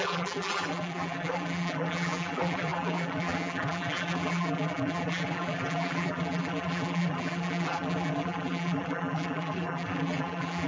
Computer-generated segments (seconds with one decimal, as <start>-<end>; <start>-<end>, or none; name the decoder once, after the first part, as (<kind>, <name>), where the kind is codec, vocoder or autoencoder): 0.0-10.7 (vocoder, BigVGAN v2)